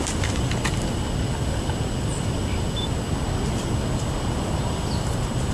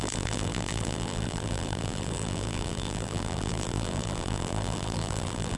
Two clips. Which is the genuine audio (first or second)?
first